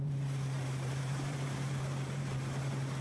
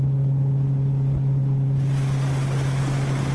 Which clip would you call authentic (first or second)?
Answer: second